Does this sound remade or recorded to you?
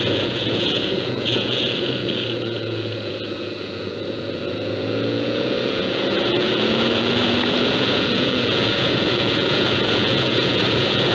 remade